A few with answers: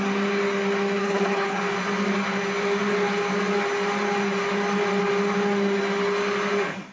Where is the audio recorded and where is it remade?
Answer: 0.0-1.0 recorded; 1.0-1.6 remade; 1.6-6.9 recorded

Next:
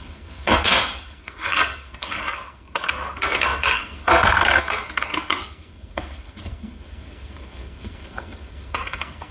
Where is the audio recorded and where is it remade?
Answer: 0.0-9.3 remade

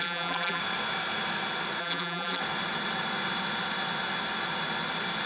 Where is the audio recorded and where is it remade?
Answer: 0.0-0.6 remade; 0.6-1.8 recorded; 1.8-2.4 remade; 2.4-5.3 recorded

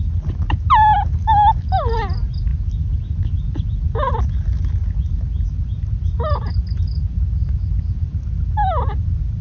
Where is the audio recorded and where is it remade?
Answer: 0.0-9.4 recorded

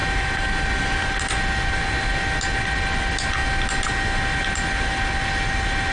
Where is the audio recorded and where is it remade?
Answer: 0.0-5.9 recorded